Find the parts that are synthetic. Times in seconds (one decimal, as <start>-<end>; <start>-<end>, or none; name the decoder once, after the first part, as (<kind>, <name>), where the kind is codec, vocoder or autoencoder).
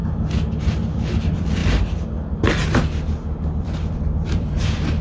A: 1.2-1.6 (vocoder, BigVGAN v2); 3.6-5.0